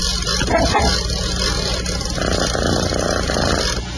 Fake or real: real